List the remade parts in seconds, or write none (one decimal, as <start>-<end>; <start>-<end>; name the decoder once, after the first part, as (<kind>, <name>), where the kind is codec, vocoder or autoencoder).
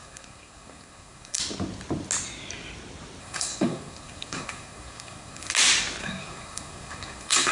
0.0-1.4 (codec, SNAC); 3.2-5.5; 6.0-7.5